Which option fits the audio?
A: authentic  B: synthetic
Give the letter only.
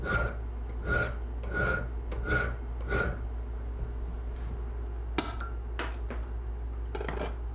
A